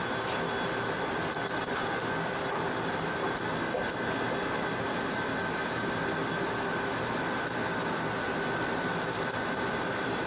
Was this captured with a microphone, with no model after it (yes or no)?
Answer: yes